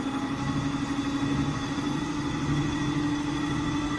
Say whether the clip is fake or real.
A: real